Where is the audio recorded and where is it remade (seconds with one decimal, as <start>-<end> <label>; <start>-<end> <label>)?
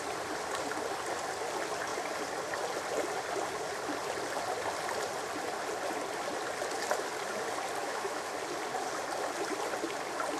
0.0-7.8 recorded; 7.8-8.3 remade; 8.3-10.4 recorded